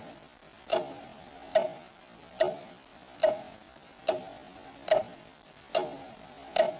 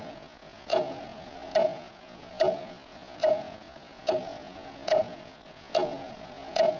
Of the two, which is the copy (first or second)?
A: second